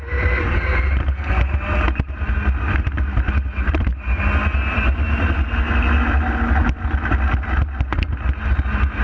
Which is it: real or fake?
real